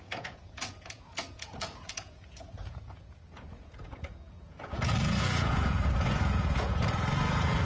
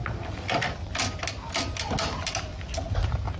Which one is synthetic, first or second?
first